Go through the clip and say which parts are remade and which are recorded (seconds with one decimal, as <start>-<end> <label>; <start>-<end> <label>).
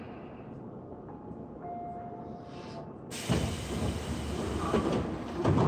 0.0-5.7 recorded